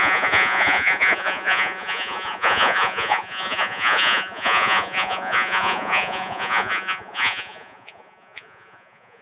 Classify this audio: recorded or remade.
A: remade